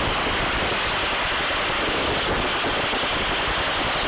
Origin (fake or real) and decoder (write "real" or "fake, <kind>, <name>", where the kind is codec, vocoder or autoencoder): real